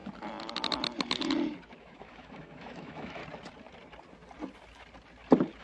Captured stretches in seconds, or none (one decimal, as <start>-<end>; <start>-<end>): 0.0-1.8; 3.2-5.6

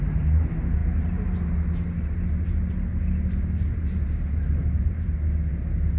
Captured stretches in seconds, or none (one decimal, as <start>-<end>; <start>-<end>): 0.8-3.3; 4.6-5.5